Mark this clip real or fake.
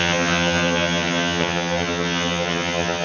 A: fake